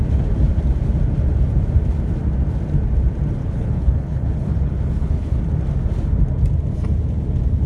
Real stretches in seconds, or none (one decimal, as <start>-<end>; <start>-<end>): 0.0-3.4; 5.4-7.7